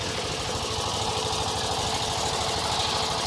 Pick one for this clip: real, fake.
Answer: real